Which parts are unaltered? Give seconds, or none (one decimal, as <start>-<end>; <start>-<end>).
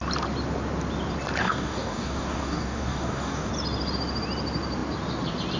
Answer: 0.0-1.4; 3.5-5.6